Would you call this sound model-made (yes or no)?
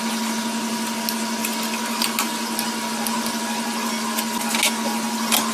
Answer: no